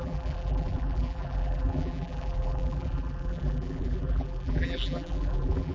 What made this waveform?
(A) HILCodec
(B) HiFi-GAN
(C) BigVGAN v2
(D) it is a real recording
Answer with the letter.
C